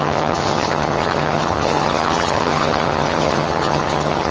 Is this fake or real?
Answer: fake